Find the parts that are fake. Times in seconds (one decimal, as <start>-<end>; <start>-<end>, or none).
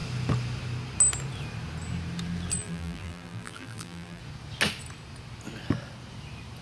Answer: 2.6-4.2